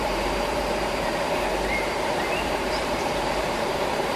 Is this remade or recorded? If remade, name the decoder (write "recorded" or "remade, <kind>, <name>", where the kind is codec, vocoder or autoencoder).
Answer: remade, vocoder, BigVGAN v2